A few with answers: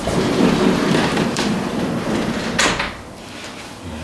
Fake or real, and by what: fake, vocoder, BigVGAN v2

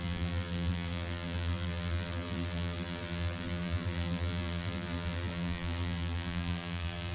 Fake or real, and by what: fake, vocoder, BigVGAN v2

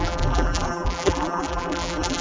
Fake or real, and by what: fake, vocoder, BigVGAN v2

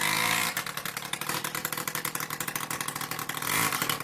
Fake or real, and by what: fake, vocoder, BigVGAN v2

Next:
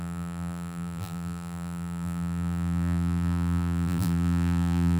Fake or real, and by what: fake, vocoder, BigVGAN v2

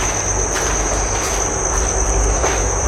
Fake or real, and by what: real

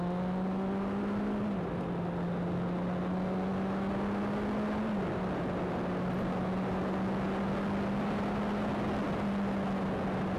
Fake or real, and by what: real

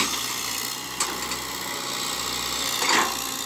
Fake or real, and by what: real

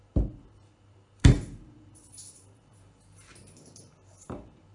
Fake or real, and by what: fake, vocoder, BigVGAN v2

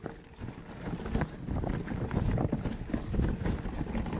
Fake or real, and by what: real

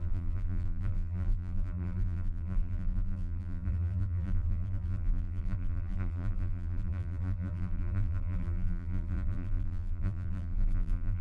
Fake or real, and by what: fake, vocoder, BigVGAN v2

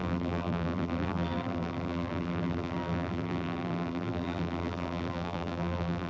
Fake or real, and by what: fake, vocoder, BigVGAN v2